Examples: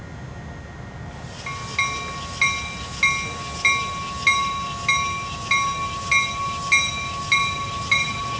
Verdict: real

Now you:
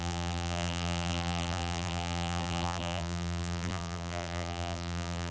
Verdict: fake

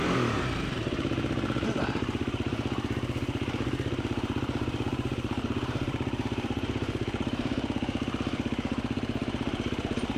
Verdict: fake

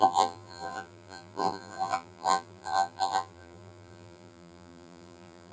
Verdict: fake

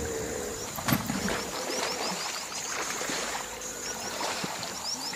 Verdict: fake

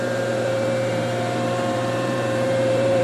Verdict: fake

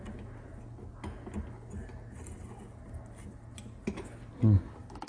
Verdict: real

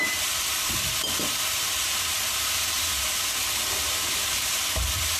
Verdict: fake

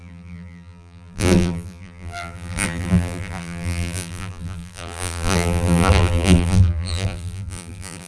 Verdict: fake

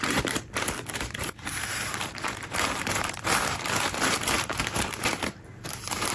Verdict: fake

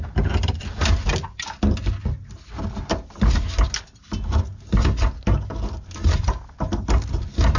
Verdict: real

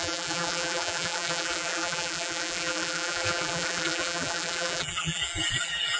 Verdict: fake